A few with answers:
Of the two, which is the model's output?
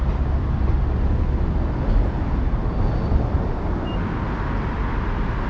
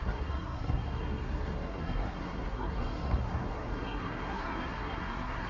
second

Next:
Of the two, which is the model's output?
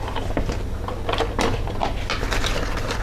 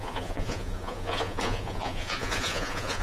second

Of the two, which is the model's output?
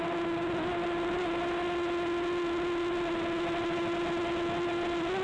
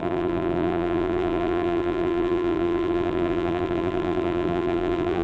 second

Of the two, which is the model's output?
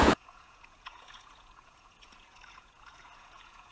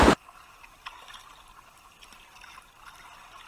first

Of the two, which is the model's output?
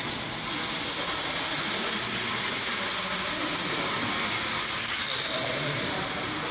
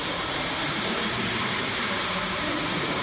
second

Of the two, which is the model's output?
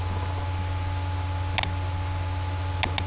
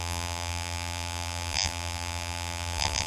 second